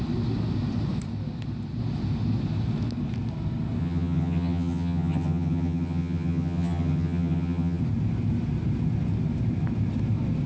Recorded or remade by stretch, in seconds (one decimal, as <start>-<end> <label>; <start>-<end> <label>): 0.0-3.8 recorded; 3.8-7.8 remade; 7.8-10.5 recorded